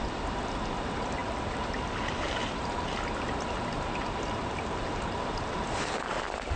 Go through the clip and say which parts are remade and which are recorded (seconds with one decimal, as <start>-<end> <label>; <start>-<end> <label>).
0.0-6.6 recorded